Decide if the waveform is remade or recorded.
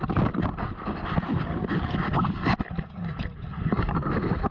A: recorded